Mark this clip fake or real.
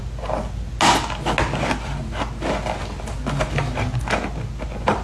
real